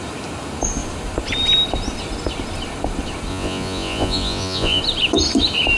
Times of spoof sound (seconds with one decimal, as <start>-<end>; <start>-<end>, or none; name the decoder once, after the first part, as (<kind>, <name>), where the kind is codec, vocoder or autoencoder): 3.3-4.8 (vocoder, Vocos)